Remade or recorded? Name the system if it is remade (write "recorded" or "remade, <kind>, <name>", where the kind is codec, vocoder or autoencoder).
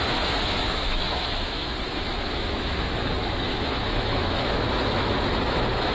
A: remade, autoencoder, DAC-VAE